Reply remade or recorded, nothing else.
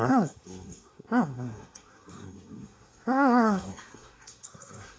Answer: remade